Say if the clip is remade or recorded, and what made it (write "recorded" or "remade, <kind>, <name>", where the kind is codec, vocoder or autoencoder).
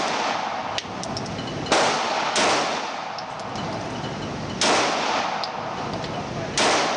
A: recorded